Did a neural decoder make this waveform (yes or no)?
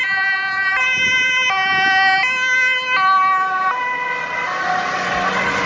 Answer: no